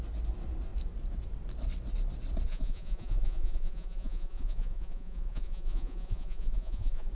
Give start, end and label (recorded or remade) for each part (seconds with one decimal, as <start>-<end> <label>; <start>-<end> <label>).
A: 0.0-2.5 recorded; 2.5-7.1 remade